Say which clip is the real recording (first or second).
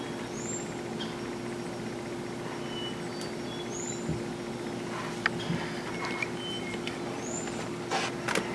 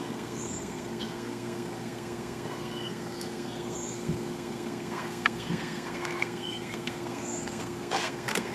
first